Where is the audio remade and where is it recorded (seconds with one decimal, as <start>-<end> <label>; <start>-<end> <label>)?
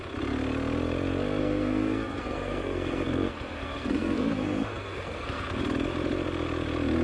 0.0-1.4 recorded; 1.4-5.6 remade; 5.6-7.0 recorded